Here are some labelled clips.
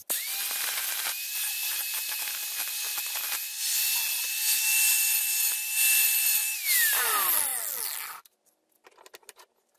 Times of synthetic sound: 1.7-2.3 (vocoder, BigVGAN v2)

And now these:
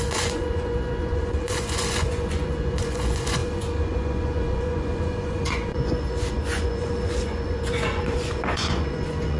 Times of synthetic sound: 0.0-9.4 (vocoder, Vocos)

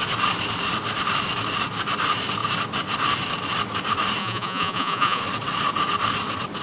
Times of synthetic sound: 4.2-5.2 (vocoder, Vocos)

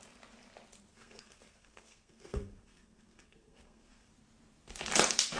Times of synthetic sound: 0.9-4.1 (codec, SNAC)